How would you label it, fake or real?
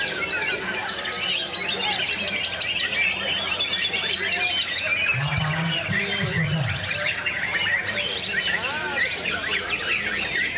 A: real